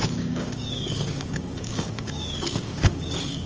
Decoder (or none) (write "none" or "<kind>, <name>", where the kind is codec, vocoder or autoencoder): codec, DAC